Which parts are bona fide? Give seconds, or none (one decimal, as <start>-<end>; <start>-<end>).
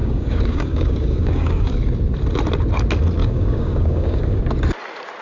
1.7-3.2; 4.4-5.2